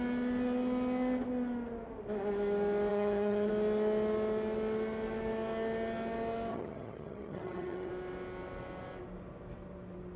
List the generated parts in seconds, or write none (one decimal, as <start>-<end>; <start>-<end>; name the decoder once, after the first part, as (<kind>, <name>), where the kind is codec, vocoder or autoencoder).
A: 2.9-3.5 (vocoder, HiFi-GAN); 6.5-7.9